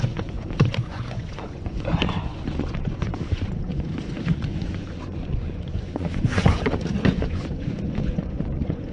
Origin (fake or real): fake